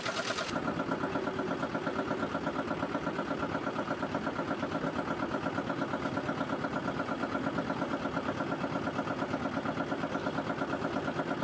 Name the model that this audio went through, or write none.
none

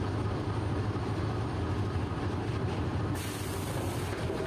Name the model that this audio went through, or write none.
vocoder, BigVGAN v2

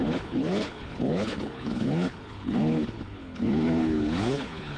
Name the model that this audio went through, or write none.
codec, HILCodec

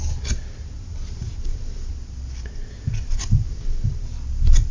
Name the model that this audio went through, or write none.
none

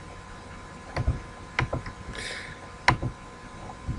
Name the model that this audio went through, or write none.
none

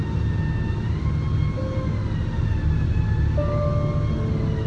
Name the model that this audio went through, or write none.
none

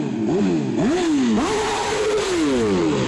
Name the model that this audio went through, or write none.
none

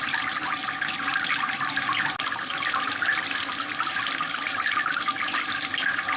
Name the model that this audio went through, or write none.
none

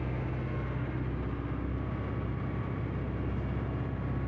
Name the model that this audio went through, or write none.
none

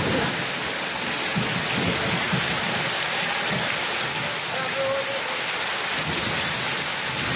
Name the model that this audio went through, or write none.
none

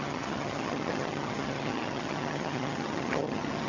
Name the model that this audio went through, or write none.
vocoder, HiFi-GAN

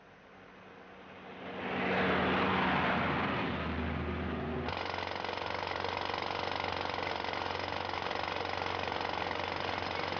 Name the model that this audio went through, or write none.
none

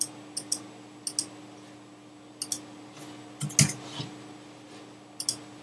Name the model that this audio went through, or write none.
none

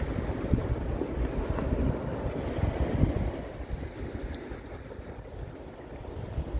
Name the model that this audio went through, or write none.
none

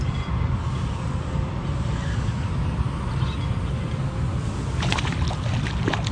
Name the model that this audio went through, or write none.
none